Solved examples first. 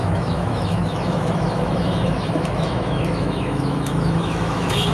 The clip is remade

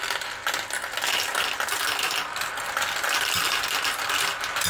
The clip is recorded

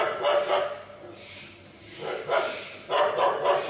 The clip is recorded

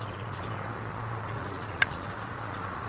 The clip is remade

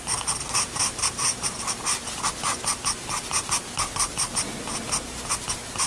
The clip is recorded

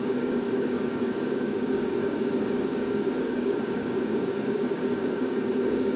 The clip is remade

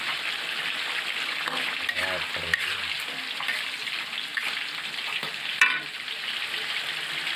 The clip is recorded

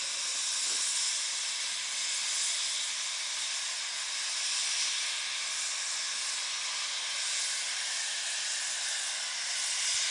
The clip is recorded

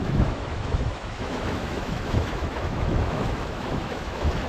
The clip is remade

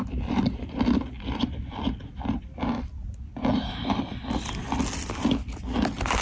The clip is recorded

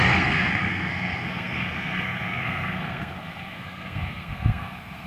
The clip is remade